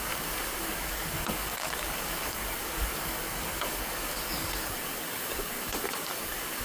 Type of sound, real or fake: fake